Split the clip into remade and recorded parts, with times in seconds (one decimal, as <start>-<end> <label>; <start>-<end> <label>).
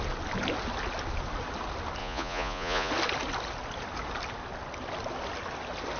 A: 0.0-2.0 recorded; 2.0-2.9 remade; 2.9-6.0 recorded